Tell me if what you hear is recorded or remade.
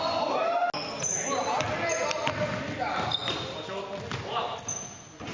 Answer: recorded